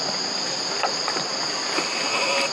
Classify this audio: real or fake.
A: real